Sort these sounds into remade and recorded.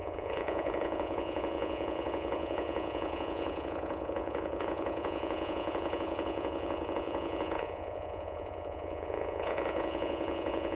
remade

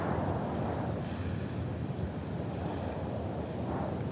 recorded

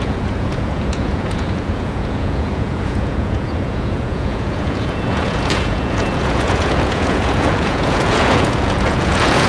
remade